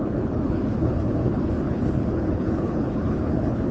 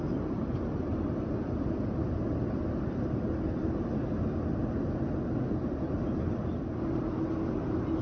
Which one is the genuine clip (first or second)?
second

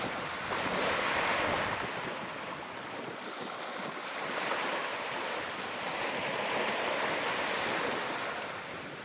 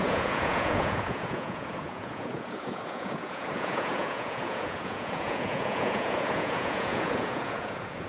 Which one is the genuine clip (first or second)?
first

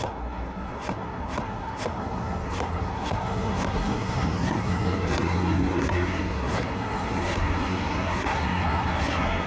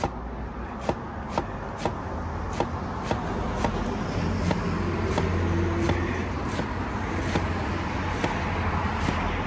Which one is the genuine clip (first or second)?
second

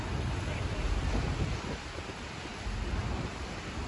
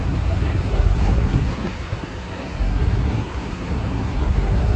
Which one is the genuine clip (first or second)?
first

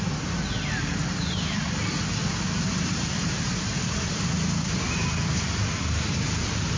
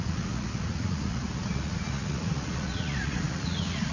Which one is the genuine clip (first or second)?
first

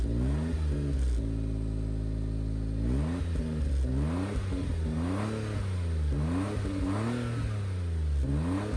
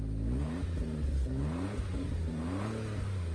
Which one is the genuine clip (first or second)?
first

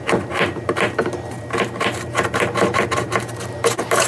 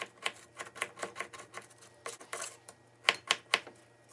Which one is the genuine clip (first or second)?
second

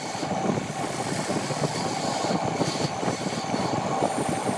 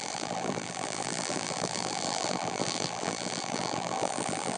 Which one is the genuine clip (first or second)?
first